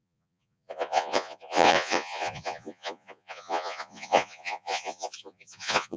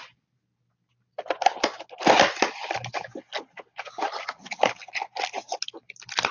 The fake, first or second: first